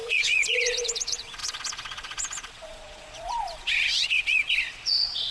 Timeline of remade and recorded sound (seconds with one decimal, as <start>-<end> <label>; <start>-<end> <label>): 0.0-5.3 remade